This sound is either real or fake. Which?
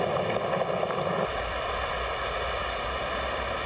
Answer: real